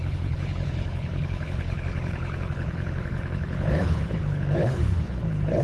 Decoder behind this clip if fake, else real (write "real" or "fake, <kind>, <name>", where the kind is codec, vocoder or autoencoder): fake, codec, HILCodec